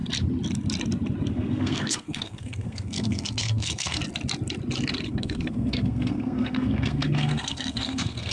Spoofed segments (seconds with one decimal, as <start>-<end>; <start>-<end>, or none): 1.3-4.0; 5.1-8.3

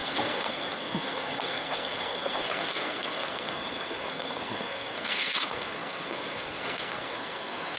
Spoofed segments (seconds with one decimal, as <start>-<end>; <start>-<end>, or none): 0.0-7.8

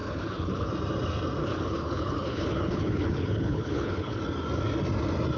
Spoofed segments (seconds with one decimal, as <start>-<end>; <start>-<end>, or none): 0.0-0.7; 1.4-4.2

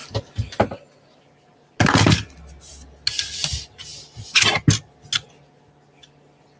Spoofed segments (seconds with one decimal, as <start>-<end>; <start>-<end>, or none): 0.0-0.6

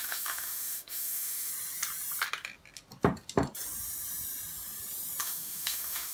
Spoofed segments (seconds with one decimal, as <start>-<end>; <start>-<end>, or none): 0.0-1.5; 5.2-6.1

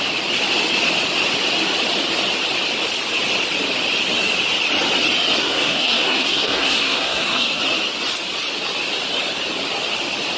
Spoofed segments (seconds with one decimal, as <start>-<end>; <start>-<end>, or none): 5.4-7.6

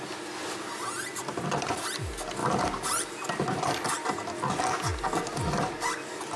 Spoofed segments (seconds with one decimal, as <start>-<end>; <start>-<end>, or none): 2.4-3.9